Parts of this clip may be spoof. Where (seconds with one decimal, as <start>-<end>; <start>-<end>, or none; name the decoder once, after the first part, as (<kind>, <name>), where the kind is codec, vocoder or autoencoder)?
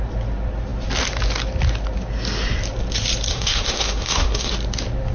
3.3-4.5 (autoencoder, DAC-VAE)